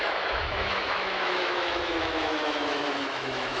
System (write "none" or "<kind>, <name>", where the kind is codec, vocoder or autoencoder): autoencoder, DAC-VAE